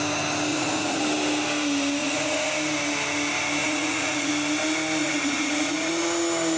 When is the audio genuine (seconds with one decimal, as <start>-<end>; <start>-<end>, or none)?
0.0-0.5; 1.0-2.0; 2.5-3.6; 4.3-5.0; 5.9-6.6